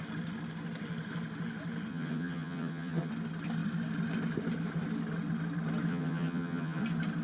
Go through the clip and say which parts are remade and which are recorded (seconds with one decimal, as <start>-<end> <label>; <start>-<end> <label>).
0.0-1.9 recorded; 1.9-3.1 remade; 3.1-5.9 recorded; 5.9-6.8 remade; 6.8-7.2 recorded